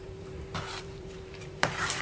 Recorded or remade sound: remade